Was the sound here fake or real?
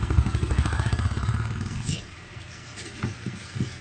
fake